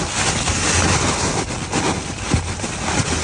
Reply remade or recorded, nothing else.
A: recorded